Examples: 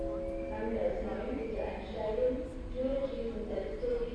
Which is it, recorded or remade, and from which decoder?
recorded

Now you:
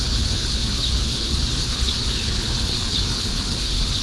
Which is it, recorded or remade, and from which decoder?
remade, codec, HILCodec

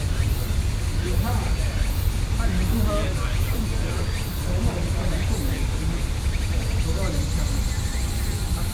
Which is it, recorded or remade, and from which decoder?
recorded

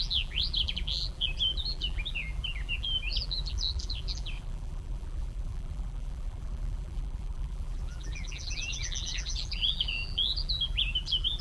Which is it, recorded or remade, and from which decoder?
remade, vocoder, BigVGAN v2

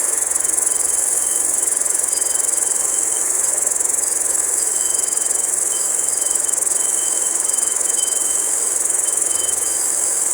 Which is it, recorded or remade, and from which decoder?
remade, autoencoder, DAC-VAE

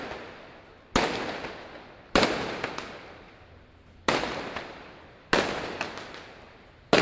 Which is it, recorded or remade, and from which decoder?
recorded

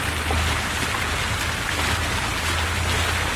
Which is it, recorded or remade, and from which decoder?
recorded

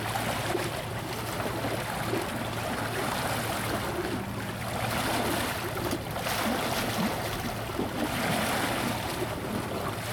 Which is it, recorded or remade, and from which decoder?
recorded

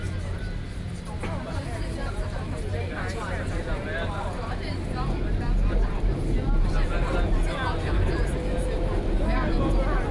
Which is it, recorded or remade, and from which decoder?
recorded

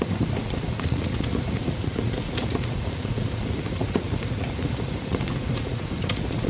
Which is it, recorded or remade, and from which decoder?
remade, vocoder, Vocos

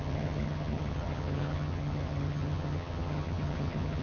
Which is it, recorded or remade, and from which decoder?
remade, vocoder, HiFi-GAN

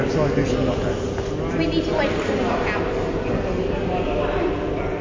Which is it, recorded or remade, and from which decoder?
recorded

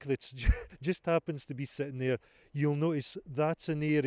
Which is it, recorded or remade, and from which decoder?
recorded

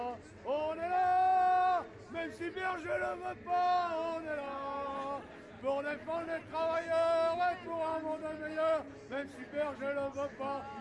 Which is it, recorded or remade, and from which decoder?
recorded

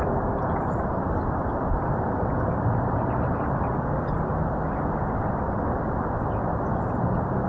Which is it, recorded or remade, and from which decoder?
recorded